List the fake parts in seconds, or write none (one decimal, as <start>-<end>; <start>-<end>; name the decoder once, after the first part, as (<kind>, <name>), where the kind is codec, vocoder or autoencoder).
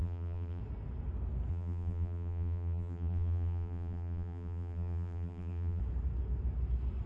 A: 0.0-0.6 (vocoder, BigVGAN v2); 1.5-5.8